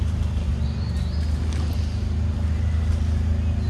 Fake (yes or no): no